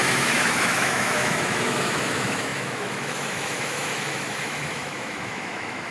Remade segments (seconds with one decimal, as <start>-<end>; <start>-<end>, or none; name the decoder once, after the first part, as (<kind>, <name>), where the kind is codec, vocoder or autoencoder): 0.0-5.9 (autoencoder, DAC-VAE)